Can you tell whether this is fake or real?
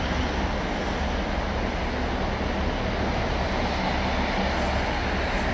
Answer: real